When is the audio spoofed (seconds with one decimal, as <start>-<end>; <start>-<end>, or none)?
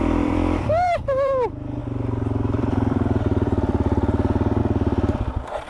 0.0-5.7